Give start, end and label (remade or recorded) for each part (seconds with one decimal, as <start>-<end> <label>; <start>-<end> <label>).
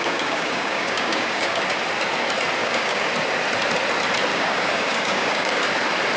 0.0-1.6 remade; 1.6-2.6 recorded; 2.6-3.1 remade; 3.1-4.3 recorded; 4.3-5.6 remade; 5.6-6.2 recorded